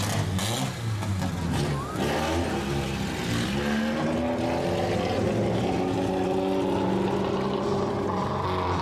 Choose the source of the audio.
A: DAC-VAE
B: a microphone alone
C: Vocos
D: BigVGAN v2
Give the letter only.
B